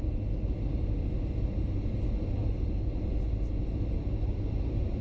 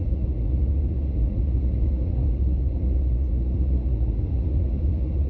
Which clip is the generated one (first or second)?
second